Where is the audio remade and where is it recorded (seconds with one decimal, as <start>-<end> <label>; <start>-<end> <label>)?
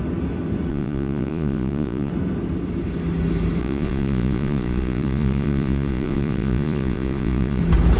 0.0-0.7 recorded; 0.7-2.1 remade; 2.1-3.6 recorded; 3.6-7.6 remade; 7.6-8.0 recorded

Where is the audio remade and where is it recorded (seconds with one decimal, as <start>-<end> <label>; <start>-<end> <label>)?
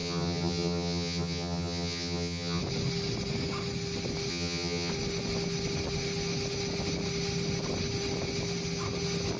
0.0-2.6 remade; 2.6-4.3 recorded; 4.3-4.9 remade; 4.9-9.4 recorded